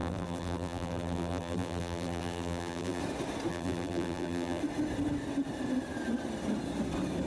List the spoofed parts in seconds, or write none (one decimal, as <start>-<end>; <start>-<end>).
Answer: 0.0-3.0; 3.5-4.6